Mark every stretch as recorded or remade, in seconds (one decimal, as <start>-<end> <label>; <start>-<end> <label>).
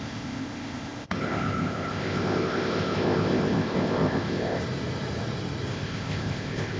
0.0-4.6 remade; 4.6-5.7 recorded; 5.7-6.8 remade